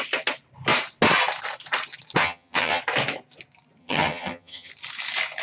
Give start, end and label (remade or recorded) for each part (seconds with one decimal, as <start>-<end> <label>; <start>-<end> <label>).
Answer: 0.0-2.2 recorded; 2.2-2.8 remade; 2.8-3.8 recorded; 3.8-4.7 remade; 4.7-5.4 recorded